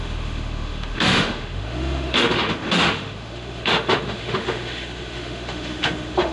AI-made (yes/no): yes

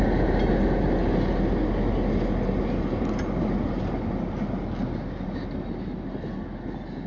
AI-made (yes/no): no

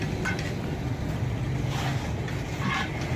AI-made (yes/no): no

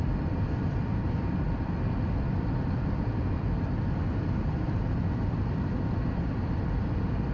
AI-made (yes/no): yes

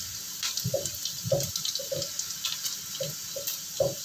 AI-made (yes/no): no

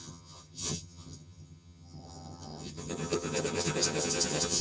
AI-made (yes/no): yes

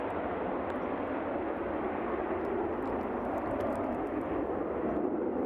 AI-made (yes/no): no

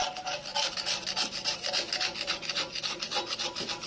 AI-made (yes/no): no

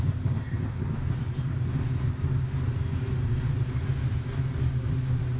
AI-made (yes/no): no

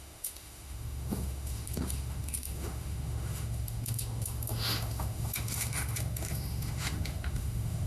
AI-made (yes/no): yes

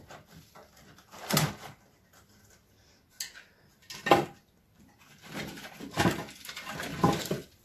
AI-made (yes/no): no